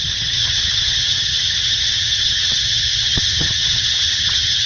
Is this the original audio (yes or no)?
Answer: no